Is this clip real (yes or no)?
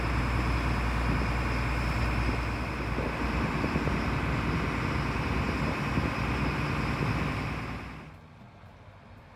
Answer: yes